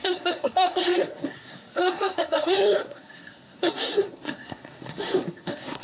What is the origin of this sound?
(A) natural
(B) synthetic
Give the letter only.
B